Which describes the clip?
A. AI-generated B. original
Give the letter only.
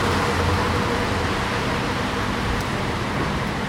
A